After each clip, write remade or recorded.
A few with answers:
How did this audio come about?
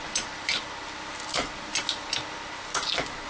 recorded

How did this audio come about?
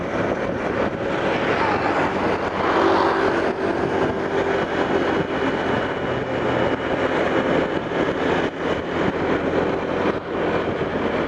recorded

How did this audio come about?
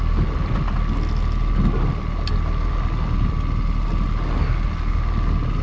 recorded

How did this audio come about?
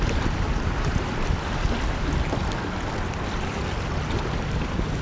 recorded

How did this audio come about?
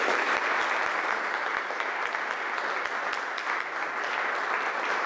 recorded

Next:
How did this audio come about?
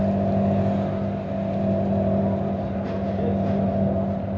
recorded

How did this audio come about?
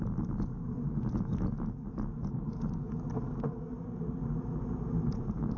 recorded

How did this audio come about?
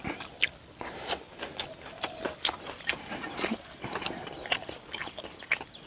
recorded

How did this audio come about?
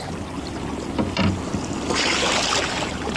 recorded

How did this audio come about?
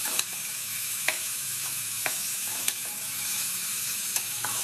remade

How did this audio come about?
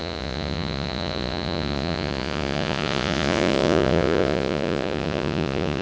remade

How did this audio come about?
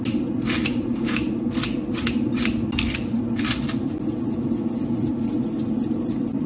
recorded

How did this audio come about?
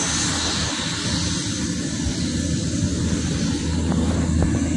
recorded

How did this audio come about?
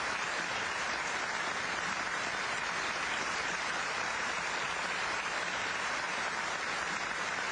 recorded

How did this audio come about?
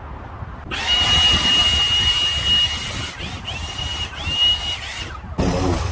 recorded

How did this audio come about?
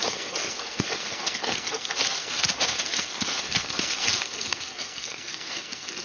remade